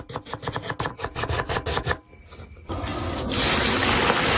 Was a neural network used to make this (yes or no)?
no